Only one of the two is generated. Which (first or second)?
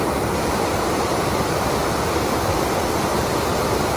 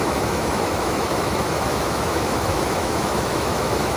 second